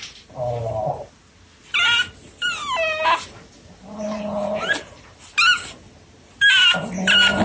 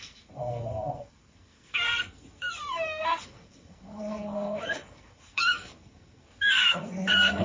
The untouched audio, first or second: first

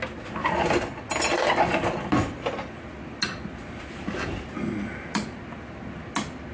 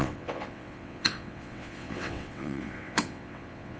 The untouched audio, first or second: first